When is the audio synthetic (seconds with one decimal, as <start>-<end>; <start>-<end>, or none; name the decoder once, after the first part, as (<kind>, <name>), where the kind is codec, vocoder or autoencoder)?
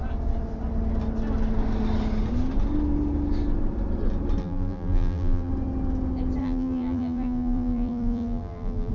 4.4-5.5 (vocoder, BigVGAN v2); 6.4-8.9